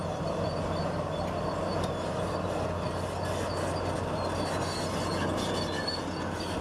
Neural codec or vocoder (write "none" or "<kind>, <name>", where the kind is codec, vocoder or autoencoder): none